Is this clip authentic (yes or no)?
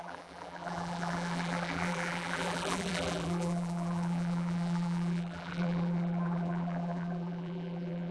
no